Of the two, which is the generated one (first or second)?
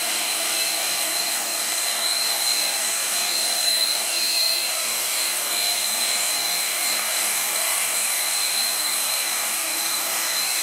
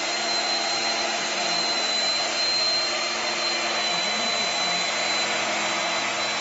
first